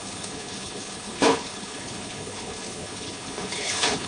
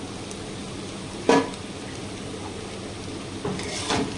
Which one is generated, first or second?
first